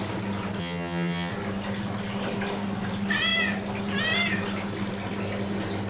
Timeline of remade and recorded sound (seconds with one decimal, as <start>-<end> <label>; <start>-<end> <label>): 0.0-0.6 recorded; 0.6-1.3 remade; 1.3-5.9 recorded